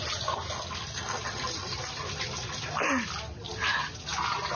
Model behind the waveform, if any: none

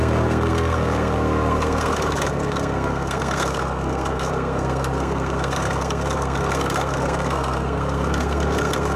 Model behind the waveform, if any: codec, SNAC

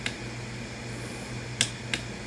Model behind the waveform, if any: none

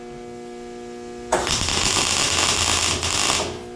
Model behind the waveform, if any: none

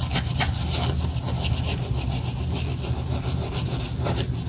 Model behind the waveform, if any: none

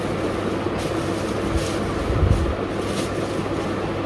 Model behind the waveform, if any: none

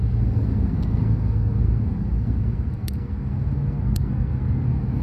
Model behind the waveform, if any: codec, SNAC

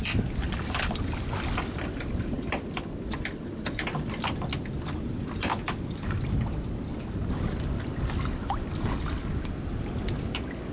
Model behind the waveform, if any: none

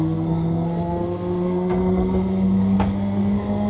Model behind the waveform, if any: codec, SNAC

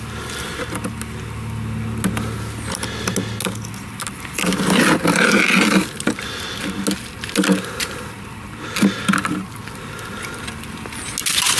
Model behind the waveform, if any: none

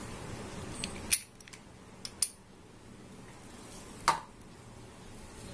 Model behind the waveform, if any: none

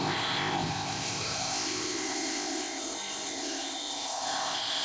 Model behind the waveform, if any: codec, ZipCodec